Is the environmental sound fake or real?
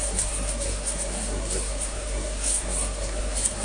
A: fake